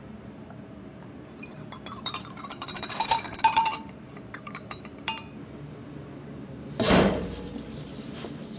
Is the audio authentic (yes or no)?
no